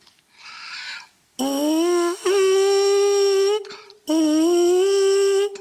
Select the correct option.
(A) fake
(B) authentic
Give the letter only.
B